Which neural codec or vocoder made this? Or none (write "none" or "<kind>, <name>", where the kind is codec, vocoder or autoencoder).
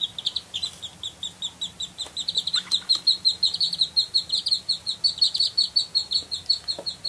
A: none